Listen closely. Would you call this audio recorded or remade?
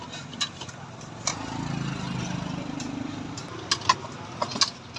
recorded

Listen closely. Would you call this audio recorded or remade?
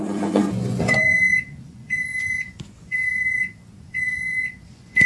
remade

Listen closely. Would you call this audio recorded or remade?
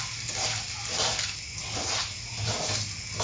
recorded